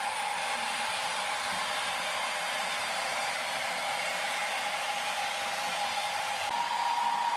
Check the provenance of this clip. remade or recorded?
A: remade